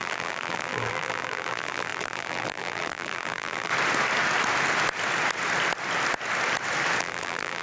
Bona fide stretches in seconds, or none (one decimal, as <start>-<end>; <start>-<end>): 3.7-7.0